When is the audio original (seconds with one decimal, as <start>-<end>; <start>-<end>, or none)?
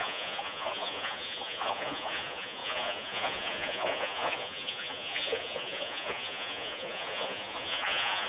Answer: none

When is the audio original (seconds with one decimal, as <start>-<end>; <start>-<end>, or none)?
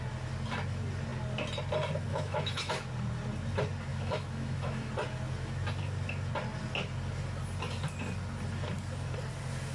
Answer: 0.0-2.1; 2.7-3.9; 4.9-9.7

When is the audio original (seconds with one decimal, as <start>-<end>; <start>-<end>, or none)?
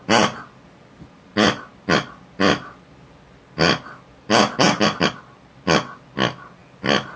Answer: 0.0-7.2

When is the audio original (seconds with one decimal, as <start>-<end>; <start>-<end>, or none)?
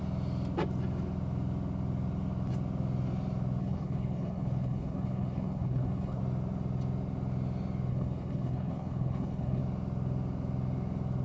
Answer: 0.0-3.6; 6.2-7.9; 9.6-11.2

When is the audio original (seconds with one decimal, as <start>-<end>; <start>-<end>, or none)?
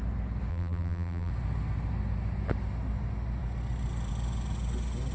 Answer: 0.0-0.5; 1.3-5.1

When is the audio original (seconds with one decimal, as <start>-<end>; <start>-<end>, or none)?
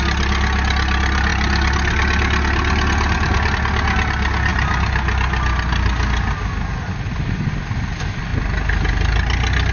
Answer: 0.0-9.7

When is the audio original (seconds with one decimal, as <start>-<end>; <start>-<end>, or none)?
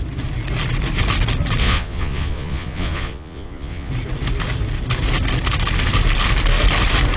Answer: 0.0-1.6; 3.9-7.2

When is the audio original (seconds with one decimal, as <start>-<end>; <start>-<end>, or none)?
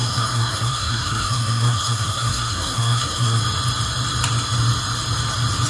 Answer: 3.4-5.7